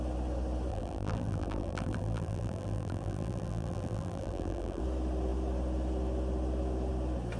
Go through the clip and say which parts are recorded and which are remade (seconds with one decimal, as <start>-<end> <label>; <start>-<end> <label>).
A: 0.0-0.7 recorded; 0.7-4.8 remade; 4.8-7.4 recorded